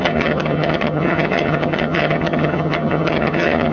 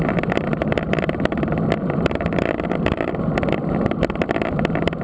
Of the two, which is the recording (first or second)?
second